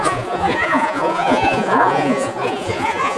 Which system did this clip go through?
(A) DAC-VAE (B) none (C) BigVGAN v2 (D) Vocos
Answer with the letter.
D